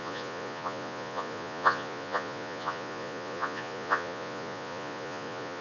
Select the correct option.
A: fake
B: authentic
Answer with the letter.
A